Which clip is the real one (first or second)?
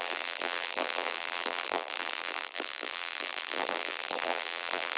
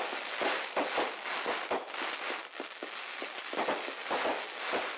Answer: second